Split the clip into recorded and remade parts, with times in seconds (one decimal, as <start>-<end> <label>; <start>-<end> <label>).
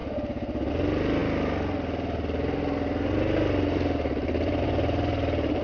0.0-5.6 recorded